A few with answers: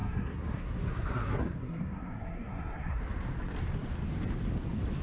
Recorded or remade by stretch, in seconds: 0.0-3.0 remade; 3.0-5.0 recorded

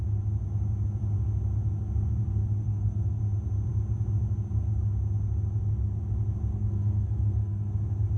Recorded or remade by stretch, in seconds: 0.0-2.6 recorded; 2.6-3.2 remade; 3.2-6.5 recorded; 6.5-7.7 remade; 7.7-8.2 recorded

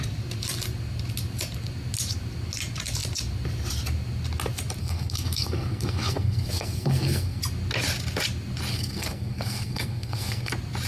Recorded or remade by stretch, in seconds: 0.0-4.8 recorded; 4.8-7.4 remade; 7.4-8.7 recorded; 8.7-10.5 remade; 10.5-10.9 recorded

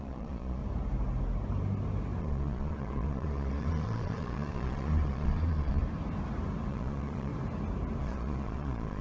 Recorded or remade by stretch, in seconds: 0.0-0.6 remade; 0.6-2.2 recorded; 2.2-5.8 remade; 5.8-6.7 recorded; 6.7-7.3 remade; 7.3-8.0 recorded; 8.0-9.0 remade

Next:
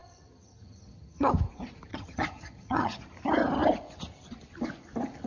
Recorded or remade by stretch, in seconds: 0.0-1.3 remade; 1.3-1.9 recorded; 1.9-3.0 remade; 3.0-5.3 recorded

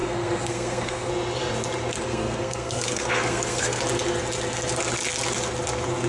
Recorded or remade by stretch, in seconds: 0.0-1.1 remade; 1.1-1.9 recorded; 1.9-3.8 remade; 3.8-6.1 recorded

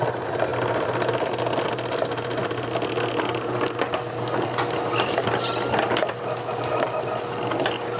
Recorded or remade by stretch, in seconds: 0.0-8.0 recorded

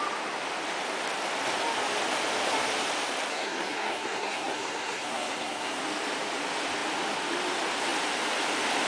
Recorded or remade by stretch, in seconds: 0.0-3.3 recorded; 3.3-5.8 remade; 5.8-8.9 recorded